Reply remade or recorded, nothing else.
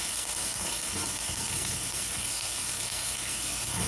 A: remade